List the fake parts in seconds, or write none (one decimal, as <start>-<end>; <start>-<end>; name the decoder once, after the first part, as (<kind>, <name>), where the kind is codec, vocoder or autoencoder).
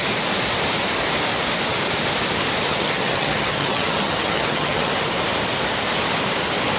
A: 2.7-4.9 (vocoder, HiFi-GAN)